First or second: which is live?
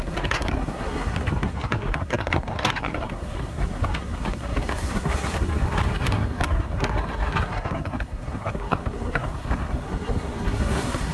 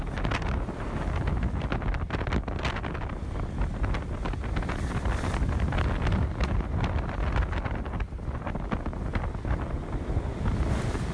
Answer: second